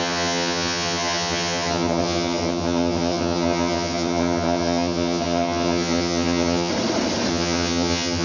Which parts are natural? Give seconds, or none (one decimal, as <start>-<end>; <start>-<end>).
6.7-7.3